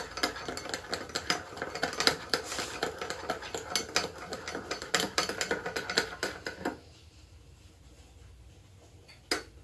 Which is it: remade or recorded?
recorded